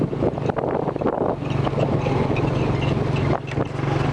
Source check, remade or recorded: recorded